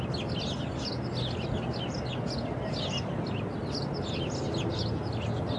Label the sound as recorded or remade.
recorded